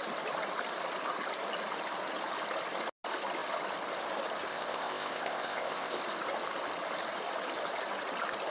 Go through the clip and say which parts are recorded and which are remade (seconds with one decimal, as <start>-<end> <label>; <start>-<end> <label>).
0.0-4.5 recorded; 4.5-6.0 remade; 6.0-8.5 recorded